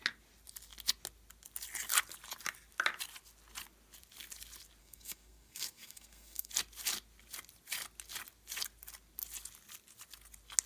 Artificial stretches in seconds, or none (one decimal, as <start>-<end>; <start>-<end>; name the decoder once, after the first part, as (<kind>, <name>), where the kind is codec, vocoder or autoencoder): 4.8-6.5 (codec, SNAC)